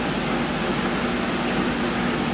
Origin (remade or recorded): recorded